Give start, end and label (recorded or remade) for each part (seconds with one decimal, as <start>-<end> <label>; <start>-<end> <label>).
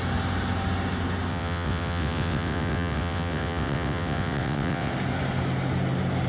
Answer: 0.0-1.3 recorded; 1.3-4.9 remade; 4.9-6.3 recorded